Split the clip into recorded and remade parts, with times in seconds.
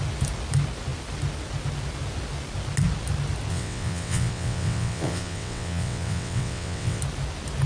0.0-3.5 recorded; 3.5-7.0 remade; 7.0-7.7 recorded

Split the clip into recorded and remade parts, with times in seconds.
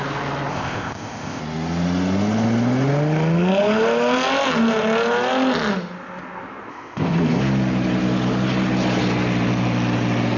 0.0-0.5 recorded; 0.5-1.4 remade; 1.4-6.7 recorded; 6.7-7.4 remade; 7.4-10.4 recorded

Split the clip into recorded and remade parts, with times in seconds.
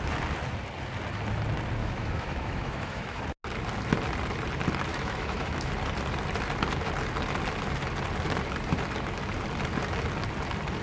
0.0-1.8 recorded; 1.8-3.2 remade; 3.2-4.9 recorded; 4.9-5.7 remade; 5.7-10.8 recorded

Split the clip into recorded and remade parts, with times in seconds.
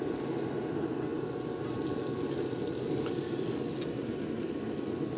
0.0-5.2 recorded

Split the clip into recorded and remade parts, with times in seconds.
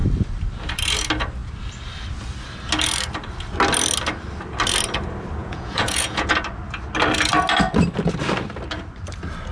0.0-5.4 recorded; 5.4-6.3 remade; 6.3-9.5 recorded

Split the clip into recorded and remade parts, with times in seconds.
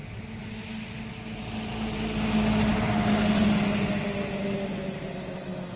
0.0-5.8 recorded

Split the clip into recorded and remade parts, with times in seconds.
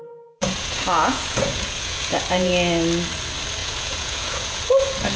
0.0-2.5 remade; 2.5-3.6 recorded; 3.6-4.6 remade; 4.6-5.2 recorded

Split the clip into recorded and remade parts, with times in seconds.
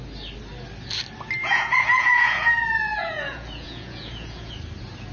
0.0-1.4 recorded; 1.4-4.5 remade; 4.5-5.1 recorded